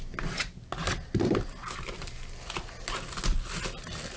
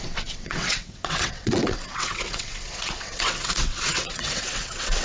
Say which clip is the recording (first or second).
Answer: first